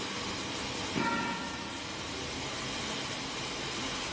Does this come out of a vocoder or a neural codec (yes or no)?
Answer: no